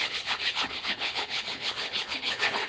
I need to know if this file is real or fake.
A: fake